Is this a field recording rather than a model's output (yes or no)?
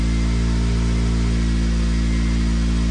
yes